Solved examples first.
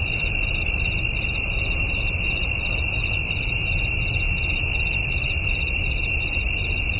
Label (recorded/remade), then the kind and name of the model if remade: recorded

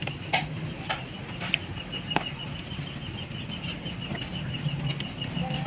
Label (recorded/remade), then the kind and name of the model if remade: recorded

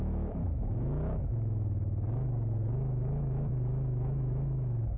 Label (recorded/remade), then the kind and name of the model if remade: remade, autoencoder, DAC-VAE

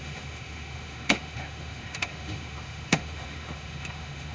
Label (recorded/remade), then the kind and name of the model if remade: remade, autoencoder, DAC-VAE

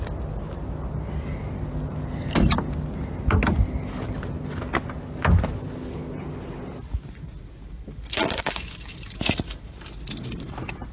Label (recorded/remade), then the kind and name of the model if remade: recorded